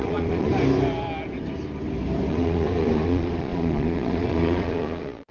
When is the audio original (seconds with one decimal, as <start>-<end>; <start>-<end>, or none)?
0.5-2.3